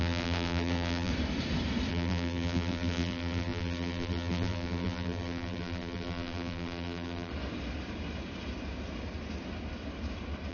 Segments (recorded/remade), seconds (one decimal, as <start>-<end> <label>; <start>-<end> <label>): 0.0-1.1 remade; 1.1-1.9 recorded; 1.9-7.3 remade; 7.3-10.5 recorded